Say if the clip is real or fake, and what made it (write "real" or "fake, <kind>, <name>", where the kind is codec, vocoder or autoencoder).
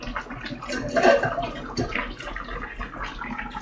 real